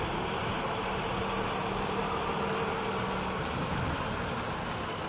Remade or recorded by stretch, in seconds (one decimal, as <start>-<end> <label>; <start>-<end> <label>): 0.0-5.1 recorded